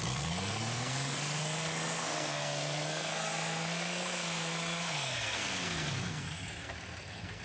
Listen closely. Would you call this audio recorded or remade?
remade